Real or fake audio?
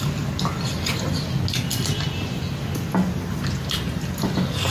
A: real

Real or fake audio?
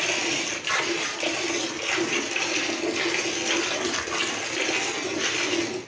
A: real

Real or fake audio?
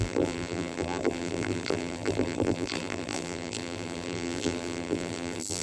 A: fake